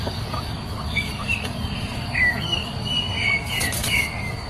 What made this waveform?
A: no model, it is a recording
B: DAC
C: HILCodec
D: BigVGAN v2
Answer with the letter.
B